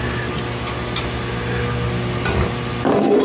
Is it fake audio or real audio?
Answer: real